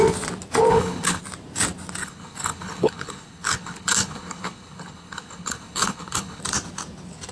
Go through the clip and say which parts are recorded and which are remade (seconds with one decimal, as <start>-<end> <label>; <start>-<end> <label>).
0.0-0.7 recorded; 0.7-1.2 remade; 1.2-2.0 recorded; 2.0-6.4 remade; 6.4-7.3 recorded